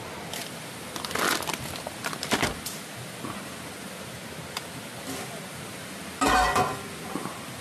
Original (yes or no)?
yes